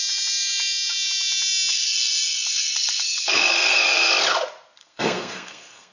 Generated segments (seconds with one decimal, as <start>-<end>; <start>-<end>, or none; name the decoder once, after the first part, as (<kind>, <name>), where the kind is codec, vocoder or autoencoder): 1.7-4.1 (codec, SNAC); 4.8-5.9